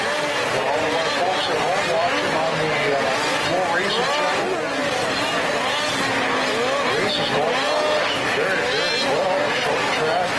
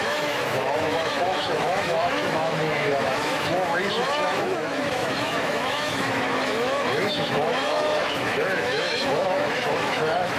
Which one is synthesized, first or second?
second